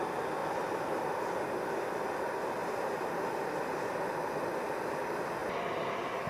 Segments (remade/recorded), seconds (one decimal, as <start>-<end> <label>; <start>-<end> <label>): 0.0-0.4 recorded; 0.4-2.1 remade; 2.1-2.6 recorded; 2.6-3.2 remade; 3.2-6.3 recorded